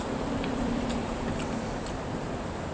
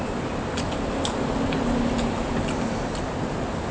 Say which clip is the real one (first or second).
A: second